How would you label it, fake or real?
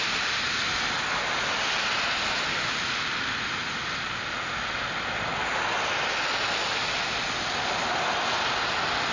real